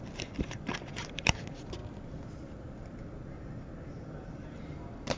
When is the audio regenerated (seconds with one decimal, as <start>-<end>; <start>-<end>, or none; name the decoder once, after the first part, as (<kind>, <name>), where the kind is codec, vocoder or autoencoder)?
0.0-1.8 (vocoder, BigVGAN v2); 2.8-5.2